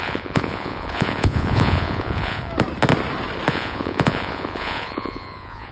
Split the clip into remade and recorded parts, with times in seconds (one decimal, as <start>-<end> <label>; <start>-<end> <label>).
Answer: 0.0-2.5 remade; 2.5-3.5 recorded; 3.5-5.7 remade

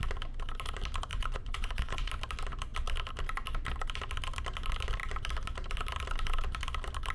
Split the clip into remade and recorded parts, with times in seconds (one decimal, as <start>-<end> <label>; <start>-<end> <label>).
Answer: 0.0-1.1 recorded; 1.1-2.1 remade; 2.1-7.1 recorded

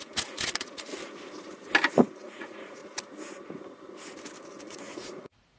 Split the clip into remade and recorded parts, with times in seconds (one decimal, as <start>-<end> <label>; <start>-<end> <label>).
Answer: 0.0-0.9 remade; 0.9-2.0 recorded; 2.0-2.8 remade; 2.8-4.6 recorded; 4.6-5.6 remade

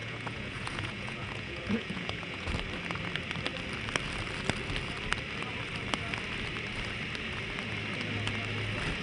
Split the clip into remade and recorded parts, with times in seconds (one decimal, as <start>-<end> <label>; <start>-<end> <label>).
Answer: 0.0-2.5 remade; 2.5-9.0 recorded

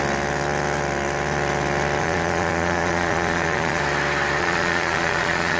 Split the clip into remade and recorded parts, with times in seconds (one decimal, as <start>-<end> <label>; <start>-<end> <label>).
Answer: 0.0-2.0 recorded; 2.0-3.8 remade; 3.8-4.4 recorded; 4.4-5.6 remade

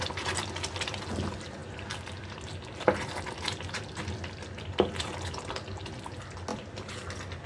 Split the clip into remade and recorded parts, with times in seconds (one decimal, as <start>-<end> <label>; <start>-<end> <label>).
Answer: 0.0-7.5 recorded

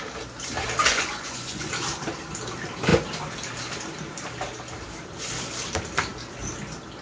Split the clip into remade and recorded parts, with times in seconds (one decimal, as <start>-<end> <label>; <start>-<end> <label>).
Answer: 0.0-0.9 recorded; 0.9-1.7 remade; 1.7-7.0 recorded

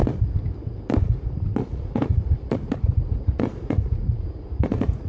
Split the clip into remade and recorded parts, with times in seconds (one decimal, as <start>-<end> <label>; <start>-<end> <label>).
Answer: 0.0-1.6 recorded; 1.6-5.1 remade